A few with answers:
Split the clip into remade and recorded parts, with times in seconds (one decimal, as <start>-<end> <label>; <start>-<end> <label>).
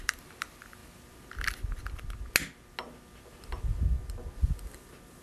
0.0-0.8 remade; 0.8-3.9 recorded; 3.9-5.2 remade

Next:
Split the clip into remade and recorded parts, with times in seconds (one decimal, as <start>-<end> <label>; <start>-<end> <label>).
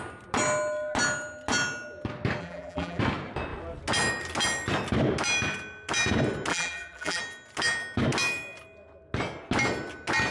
0.0-2.4 recorded; 2.4-3.0 remade; 3.0-6.5 recorded; 6.5-7.2 remade; 7.2-10.3 recorded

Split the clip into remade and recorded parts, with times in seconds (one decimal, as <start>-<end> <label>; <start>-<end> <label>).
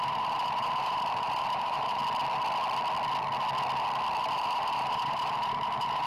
0.0-2.0 remade; 2.0-4.2 recorded; 4.2-6.1 remade